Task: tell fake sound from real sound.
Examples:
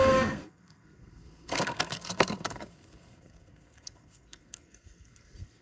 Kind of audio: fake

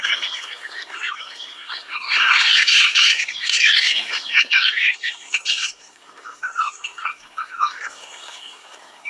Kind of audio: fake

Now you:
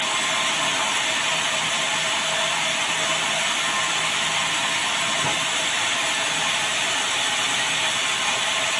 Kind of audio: real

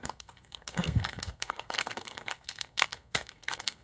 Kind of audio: fake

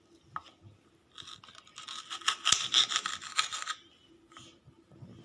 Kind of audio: real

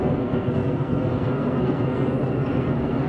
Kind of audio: fake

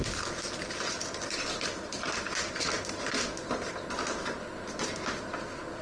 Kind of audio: real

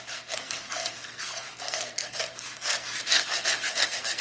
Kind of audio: fake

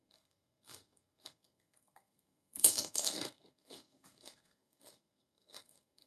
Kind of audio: fake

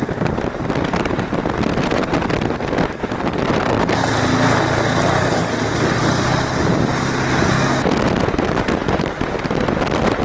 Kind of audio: real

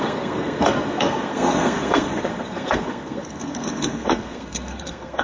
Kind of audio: fake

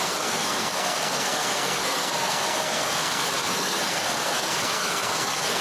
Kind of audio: fake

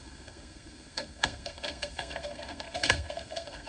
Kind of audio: fake